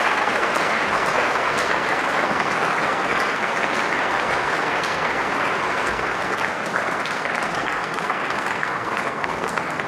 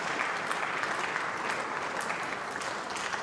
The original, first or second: second